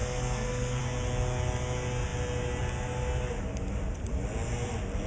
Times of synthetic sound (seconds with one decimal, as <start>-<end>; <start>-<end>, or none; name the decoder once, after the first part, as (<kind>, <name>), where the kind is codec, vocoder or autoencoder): 0.0-0.8 (codec, SNAC)